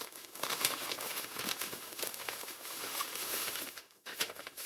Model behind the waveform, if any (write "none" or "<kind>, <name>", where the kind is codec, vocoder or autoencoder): autoencoder, DAC-VAE